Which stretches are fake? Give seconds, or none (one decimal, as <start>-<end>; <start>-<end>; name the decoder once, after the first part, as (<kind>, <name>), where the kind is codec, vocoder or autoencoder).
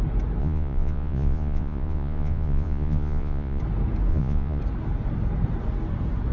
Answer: 0.4-3.6 (vocoder, Vocos); 4.1-4.6